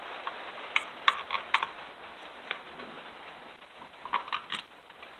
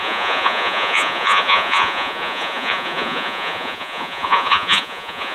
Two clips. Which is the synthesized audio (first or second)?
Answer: second